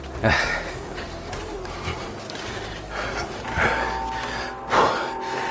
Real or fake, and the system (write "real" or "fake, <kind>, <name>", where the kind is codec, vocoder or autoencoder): real